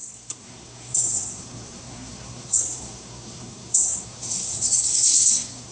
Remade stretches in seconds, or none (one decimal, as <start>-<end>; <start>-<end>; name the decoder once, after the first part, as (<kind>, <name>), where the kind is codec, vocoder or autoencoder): 0.0-5.7 (codec, SNAC)